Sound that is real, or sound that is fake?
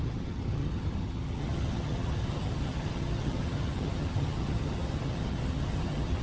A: fake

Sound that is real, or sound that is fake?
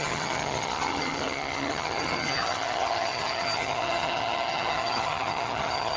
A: fake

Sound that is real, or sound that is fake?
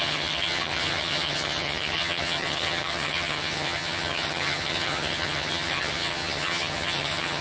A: fake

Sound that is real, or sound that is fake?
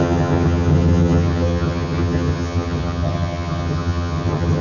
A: fake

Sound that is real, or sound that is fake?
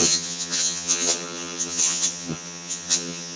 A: fake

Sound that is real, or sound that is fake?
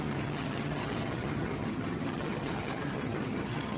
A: fake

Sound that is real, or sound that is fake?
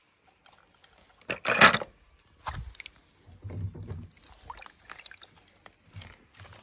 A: real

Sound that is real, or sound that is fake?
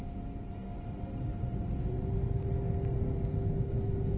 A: real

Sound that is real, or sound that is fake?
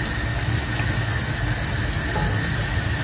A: real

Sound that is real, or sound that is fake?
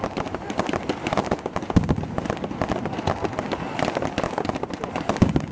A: real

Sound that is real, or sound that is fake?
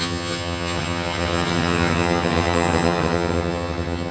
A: fake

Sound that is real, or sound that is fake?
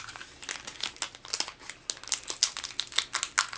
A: real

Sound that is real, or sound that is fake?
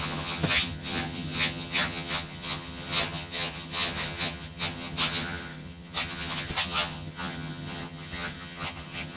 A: fake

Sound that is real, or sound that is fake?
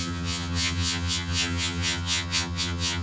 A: fake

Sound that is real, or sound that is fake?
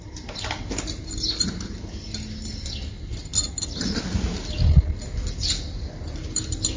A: real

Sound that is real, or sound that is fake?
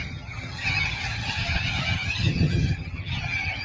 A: fake